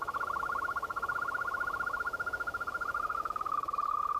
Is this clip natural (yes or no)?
no